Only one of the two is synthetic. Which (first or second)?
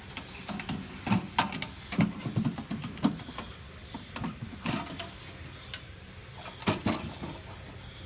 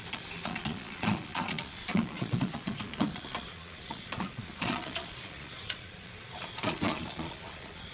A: second